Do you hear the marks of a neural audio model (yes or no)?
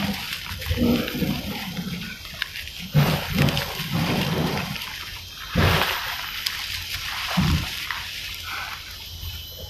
yes